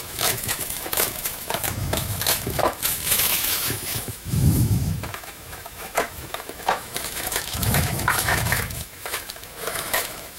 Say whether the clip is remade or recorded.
remade